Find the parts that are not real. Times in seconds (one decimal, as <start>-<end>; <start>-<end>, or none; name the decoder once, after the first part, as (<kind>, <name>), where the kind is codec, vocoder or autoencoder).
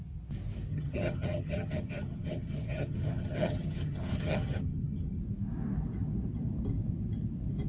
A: 0.7-5.2 (vocoder, HiFi-GAN)